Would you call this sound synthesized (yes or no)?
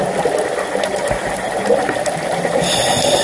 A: no